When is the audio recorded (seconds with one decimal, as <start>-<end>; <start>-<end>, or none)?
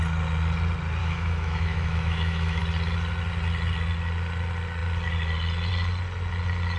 0.0-1.0; 2.6-6.8